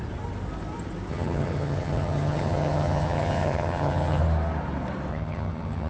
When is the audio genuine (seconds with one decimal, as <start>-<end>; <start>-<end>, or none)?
0.0-1.1; 4.2-5.1